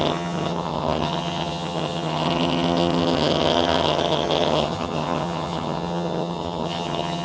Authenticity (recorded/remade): remade